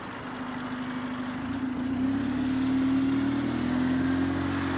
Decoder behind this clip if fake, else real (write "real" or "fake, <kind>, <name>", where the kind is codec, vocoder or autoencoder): real